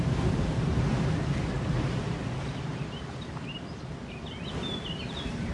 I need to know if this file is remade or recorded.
recorded